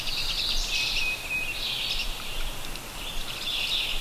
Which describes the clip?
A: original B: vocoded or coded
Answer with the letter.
A